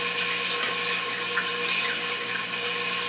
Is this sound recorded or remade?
recorded